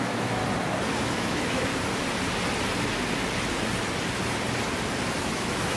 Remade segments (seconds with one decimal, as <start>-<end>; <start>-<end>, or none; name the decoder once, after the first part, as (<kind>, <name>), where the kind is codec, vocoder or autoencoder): 0.0-0.4 (autoencoder, DAC-VAE); 1.0-1.7; 5.2-5.8